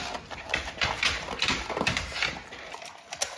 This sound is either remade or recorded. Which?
recorded